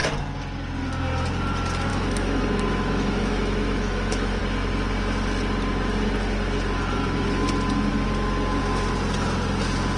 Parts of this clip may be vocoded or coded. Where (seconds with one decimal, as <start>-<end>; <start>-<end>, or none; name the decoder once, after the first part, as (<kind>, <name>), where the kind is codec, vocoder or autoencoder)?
1.9-4.4 (autoencoder, DAC-VAE)